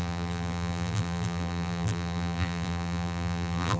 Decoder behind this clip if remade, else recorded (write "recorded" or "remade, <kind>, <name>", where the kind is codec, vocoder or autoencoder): remade, vocoder, BigVGAN v2